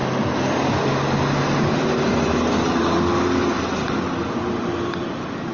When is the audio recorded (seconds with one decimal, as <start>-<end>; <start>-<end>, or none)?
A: 0.0-5.5